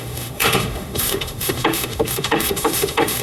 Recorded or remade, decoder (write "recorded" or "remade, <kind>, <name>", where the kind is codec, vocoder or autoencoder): remade, autoencoder, DAC-VAE